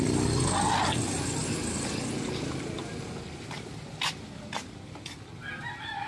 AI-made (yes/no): no